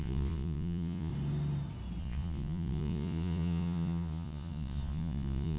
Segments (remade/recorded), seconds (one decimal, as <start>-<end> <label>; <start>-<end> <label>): 0.0-1.1 remade; 1.1-2.0 recorded; 2.0-5.6 remade